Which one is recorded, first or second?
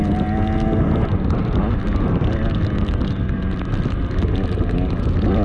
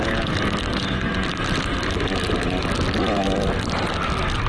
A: first